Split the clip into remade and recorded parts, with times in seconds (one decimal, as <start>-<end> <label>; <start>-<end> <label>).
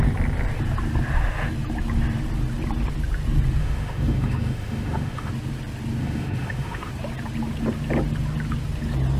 0.0-3.6 recorded; 3.6-5.3 remade; 5.3-6.0 recorded; 6.0-6.9 remade; 6.9-9.2 recorded